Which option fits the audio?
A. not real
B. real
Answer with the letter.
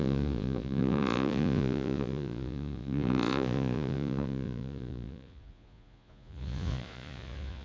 A